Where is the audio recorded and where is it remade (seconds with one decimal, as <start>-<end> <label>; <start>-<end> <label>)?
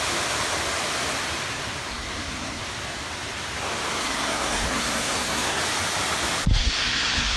0.0-1.9 recorded; 1.9-2.6 remade; 2.6-4.0 recorded; 4.0-5.6 remade; 5.6-6.6 recorded; 6.6-7.4 remade